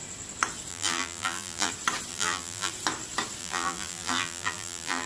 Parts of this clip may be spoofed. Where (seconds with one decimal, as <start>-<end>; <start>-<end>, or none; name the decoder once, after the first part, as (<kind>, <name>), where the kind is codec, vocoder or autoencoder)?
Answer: 0.7-1.7 (vocoder, BigVGAN v2); 2.1-2.7; 3.4-5.1